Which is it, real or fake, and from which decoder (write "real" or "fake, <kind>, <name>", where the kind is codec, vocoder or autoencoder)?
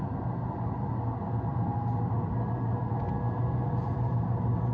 real